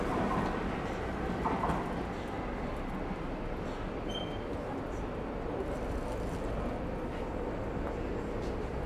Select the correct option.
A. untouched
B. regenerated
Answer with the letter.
A